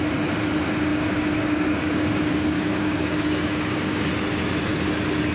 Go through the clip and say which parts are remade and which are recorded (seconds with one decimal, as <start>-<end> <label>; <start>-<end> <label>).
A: 0.0-0.9 recorded; 0.9-4.1 remade; 4.1-5.3 recorded